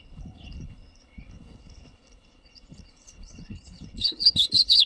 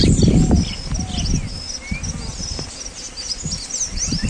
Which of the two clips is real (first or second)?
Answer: second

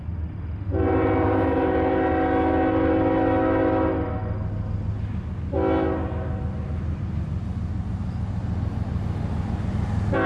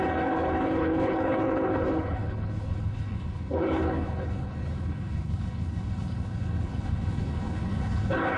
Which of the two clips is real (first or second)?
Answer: first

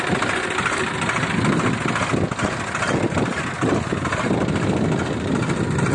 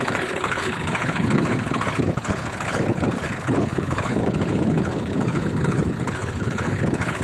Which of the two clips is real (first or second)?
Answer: first